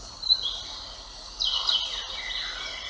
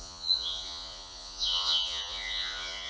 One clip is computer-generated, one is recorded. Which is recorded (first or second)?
first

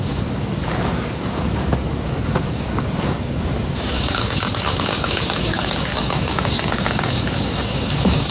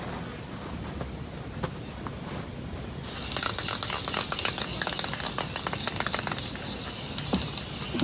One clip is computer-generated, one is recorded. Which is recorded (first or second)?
second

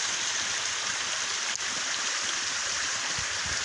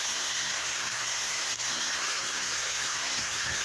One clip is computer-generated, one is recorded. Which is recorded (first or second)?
first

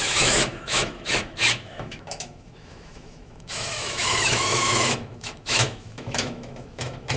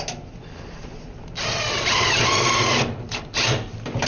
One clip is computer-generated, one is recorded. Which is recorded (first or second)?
second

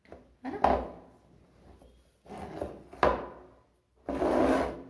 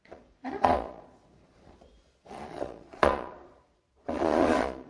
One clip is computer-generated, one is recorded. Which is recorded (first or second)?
first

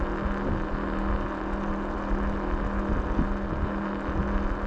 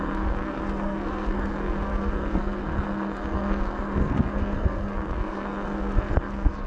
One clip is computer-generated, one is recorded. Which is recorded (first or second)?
first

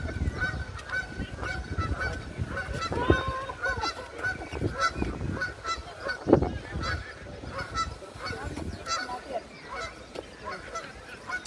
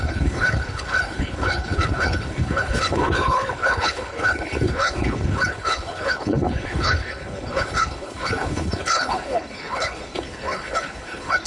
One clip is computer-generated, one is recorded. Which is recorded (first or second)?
first